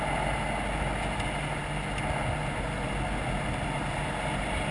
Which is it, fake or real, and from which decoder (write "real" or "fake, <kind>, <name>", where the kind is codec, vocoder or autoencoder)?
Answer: real